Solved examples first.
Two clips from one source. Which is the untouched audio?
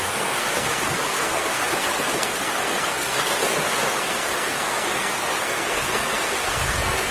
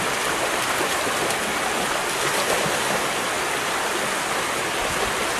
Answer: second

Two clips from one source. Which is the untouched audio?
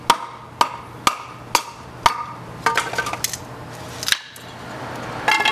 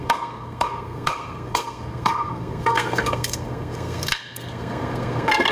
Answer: first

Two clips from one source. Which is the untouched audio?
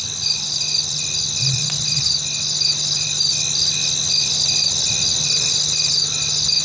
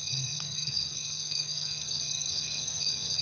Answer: first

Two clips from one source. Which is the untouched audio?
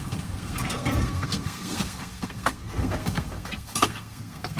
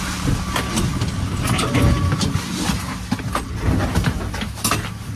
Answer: second